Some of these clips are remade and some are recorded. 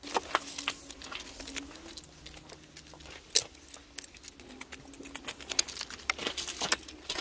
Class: recorded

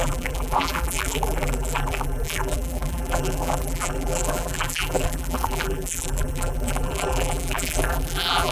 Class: remade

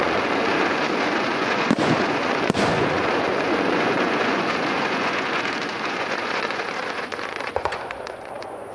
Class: remade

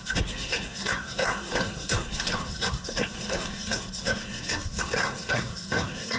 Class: remade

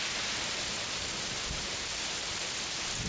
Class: recorded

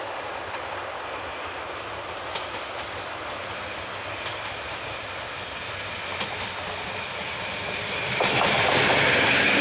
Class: recorded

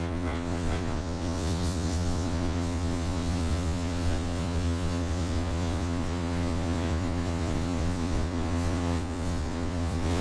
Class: remade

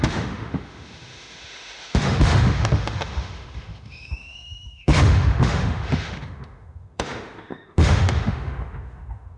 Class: remade